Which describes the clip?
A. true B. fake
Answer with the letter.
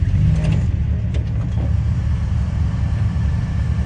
A